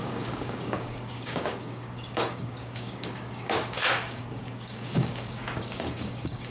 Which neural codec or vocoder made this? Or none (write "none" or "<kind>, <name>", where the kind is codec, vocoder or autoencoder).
codec, DAC